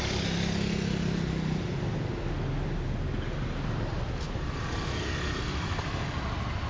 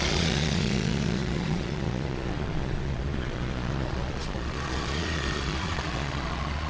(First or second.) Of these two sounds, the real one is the first